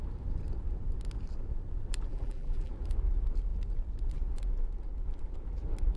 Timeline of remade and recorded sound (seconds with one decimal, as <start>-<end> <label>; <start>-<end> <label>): 0.0-2.1 recorded; 2.1-2.7 remade; 2.7-6.0 recorded

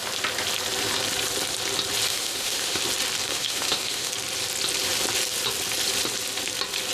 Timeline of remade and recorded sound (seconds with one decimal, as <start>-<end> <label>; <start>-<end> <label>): 0.0-2.1 recorded; 2.1-2.8 remade; 2.8-3.3 recorded; 3.3-4.1 remade; 4.1-6.9 recorded